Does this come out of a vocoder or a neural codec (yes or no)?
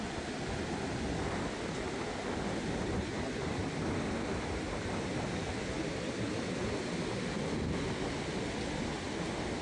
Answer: no